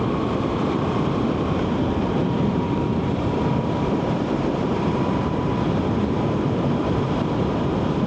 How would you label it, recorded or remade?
remade